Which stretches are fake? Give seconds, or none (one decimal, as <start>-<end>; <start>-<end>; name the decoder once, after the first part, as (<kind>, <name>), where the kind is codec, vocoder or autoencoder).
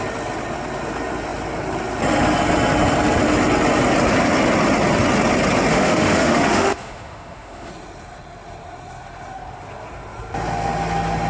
5.7-7.7 (autoencoder, DAC-VAE)